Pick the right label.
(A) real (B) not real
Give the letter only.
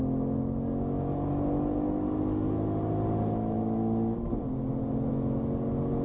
A